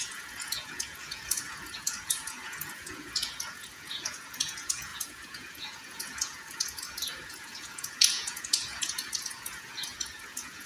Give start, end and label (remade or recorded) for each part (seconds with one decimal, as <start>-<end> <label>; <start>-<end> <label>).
0.0-10.7 remade